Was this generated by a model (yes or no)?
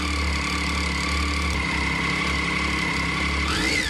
no